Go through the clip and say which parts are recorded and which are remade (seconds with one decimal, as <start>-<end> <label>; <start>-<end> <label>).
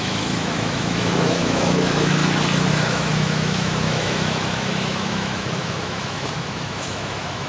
0.0-2.2 remade; 2.2-2.7 recorded; 2.7-7.5 remade